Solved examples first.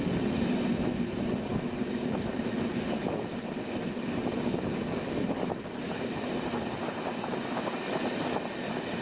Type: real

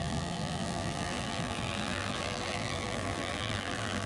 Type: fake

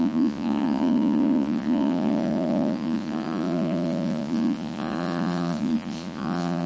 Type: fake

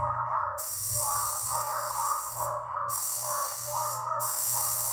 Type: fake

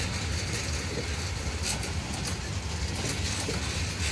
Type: real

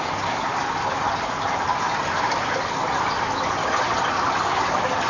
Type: real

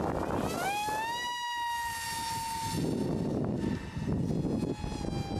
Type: real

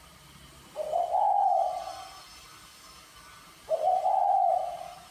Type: real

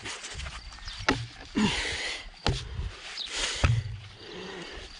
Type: real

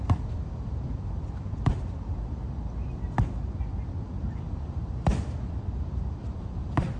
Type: fake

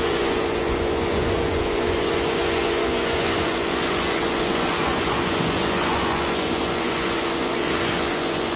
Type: fake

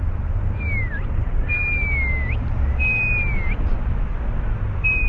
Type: real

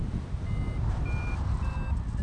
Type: real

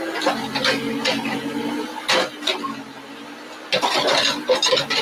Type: real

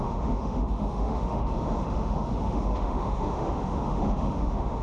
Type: fake